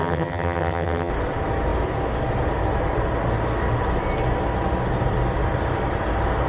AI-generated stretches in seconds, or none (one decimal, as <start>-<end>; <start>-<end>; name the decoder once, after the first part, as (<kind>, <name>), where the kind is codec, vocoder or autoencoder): 0.0-1.1 (vocoder, HiFi-GAN)